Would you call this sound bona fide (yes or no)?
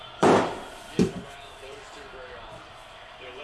no